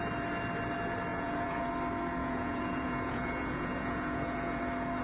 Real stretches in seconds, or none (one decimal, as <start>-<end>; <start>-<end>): 0.0-1.1; 1.7-2.2; 4.6-5.0